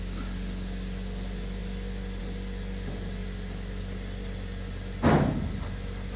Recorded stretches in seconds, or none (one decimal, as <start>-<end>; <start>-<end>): 0.0-6.2